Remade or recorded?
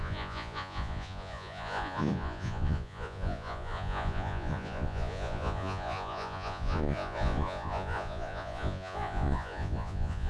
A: remade